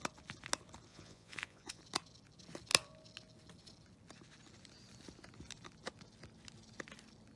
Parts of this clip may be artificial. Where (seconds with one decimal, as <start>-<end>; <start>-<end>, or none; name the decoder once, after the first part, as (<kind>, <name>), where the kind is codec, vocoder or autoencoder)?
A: 0.9-1.8 (vocoder, Vocos)